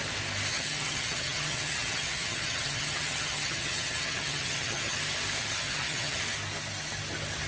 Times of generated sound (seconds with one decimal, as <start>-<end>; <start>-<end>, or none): 0.5-5.0; 5.4-6.2